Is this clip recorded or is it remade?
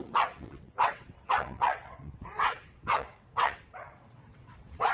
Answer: remade